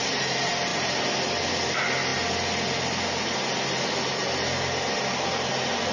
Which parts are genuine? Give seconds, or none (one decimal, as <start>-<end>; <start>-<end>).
0.0-5.9